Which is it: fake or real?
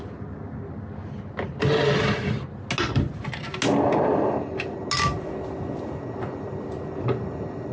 real